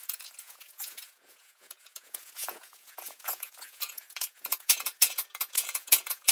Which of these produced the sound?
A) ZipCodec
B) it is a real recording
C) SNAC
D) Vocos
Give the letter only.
D